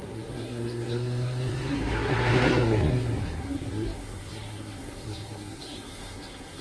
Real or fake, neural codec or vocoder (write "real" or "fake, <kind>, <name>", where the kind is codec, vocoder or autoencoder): fake, codec, SNAC